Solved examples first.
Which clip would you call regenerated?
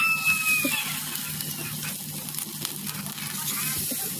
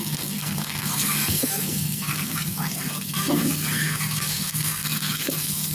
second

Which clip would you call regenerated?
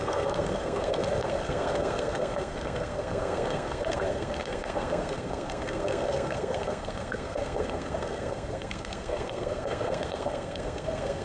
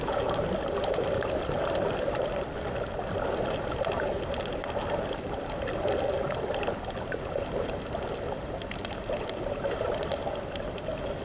first